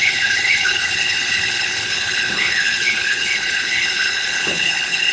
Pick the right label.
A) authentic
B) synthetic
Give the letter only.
B